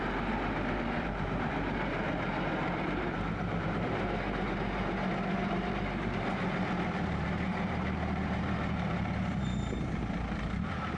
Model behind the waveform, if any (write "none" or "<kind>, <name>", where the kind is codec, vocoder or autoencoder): vocoder, BigVGAN v2